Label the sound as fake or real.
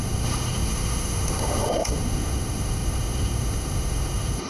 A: fake